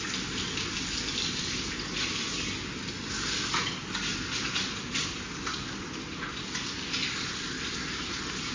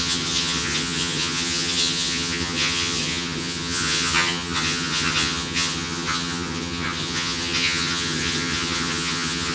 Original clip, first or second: first